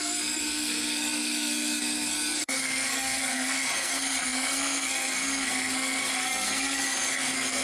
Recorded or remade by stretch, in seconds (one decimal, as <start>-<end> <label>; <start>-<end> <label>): 0.0-7.6 remade